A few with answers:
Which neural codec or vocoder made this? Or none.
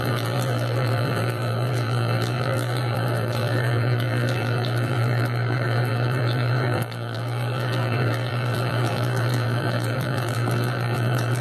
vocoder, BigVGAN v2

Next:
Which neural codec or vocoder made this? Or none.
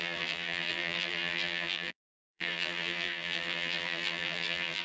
vocoder, BigVGAN v2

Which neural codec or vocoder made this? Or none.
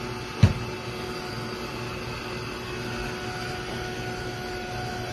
none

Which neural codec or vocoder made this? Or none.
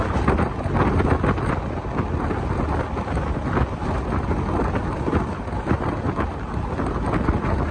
none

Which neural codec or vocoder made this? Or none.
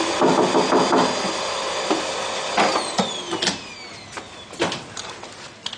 none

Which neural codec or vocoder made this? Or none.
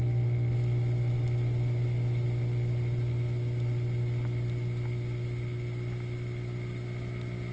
none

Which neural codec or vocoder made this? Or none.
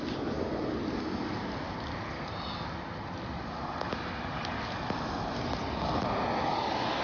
none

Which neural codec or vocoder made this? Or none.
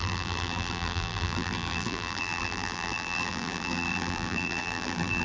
vocoder, BigVGAN v2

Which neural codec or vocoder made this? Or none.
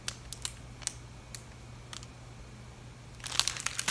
none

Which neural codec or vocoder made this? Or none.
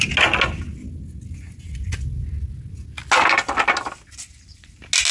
none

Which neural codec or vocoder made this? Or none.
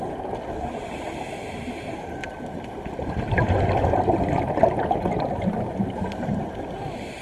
none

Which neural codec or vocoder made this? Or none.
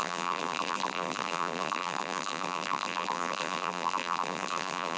vocoder, BigVGAN v2